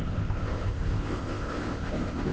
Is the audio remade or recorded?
remade